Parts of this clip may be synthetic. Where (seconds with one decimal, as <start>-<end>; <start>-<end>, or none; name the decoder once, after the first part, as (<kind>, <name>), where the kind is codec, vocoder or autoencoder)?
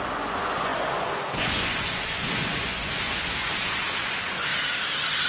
0.0-4.5 (vocoder, Vocos)